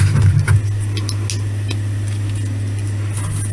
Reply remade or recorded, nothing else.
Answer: recorded